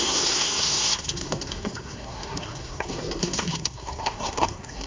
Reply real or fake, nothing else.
fake